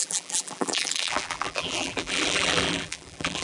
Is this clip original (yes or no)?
no